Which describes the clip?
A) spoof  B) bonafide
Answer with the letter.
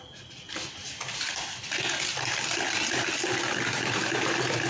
B